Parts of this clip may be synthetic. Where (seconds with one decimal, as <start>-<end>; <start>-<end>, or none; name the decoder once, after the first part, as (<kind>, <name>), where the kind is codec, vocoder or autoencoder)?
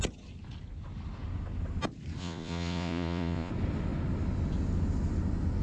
2.2-3.5 (vocoder, Vocos)